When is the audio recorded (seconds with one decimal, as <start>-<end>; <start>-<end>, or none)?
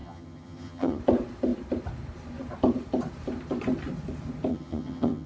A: 1.0-4.5